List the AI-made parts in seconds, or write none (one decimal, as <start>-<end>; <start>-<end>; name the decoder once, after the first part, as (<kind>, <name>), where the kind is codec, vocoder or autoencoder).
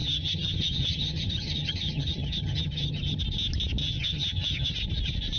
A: 0.0-3.2 (vocoder, HiFi-GAN); 3.8-4.7